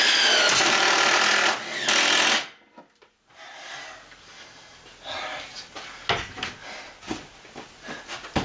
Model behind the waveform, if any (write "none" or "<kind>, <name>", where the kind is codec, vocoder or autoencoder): none